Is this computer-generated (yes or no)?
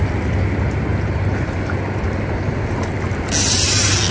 no